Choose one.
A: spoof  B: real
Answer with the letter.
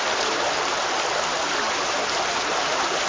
B